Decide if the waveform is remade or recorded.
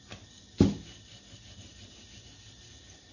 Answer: recorded